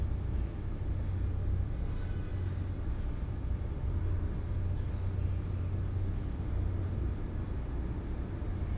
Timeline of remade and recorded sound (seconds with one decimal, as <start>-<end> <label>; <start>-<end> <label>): 0.0-8.8 recorded